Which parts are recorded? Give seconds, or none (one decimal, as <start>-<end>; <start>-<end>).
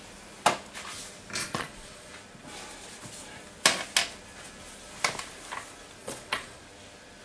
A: 0.0-1.4; 2.1-6.0; 6.6-7.2